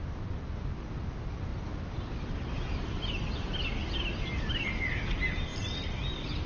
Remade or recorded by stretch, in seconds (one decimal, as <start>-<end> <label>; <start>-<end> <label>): 0.0-6.5 recorded